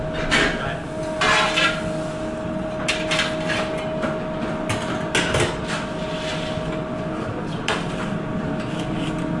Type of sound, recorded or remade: recorded